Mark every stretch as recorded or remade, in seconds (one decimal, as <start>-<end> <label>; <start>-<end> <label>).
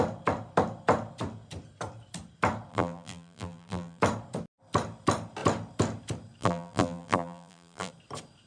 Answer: 0.0-2.7 recorded; 2.7-4.0 remade; 4.0-6.4 recorded; 6.4-7.9 remade; 7.9-8.5 recorded